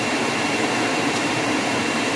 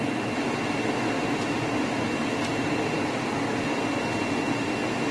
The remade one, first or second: first